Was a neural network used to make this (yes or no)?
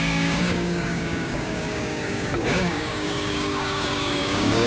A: yes